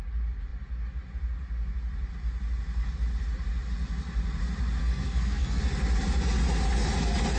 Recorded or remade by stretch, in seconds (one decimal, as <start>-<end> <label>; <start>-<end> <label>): 0.0-4.8 recorded; 4.8-5.6 remade; 5.6-7.4 recorded